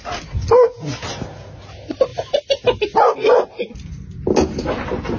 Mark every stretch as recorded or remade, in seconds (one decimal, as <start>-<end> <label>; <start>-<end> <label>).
0.0-5.2 recorded